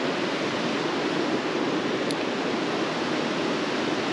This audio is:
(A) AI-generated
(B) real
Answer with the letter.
B